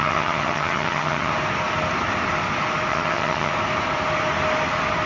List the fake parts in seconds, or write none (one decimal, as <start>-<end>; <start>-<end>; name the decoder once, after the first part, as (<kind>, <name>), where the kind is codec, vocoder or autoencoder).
0.0-1.3 (vocoder, HiFi-GAN); 2.9-3.5